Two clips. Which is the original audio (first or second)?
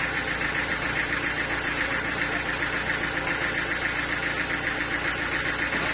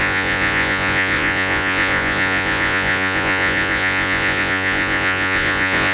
first